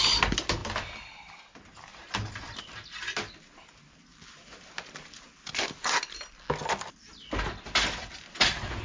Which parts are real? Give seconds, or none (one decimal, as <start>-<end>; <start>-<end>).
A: 0.0-8.8